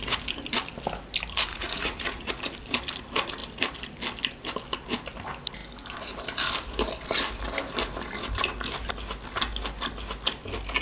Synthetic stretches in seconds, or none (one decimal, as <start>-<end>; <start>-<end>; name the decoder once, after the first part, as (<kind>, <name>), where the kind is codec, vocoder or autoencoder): 1.5-2.3 (vocoder, Vocos)